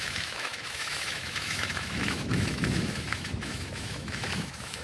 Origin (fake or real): fake